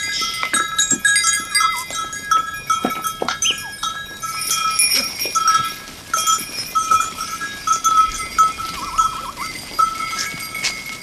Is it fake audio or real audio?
real